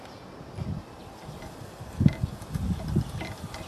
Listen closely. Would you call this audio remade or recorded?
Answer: recorded